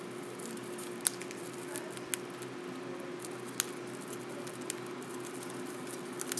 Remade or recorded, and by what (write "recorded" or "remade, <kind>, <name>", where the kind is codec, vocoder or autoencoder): recorded